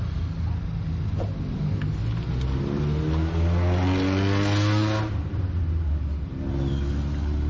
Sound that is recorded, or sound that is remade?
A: recorded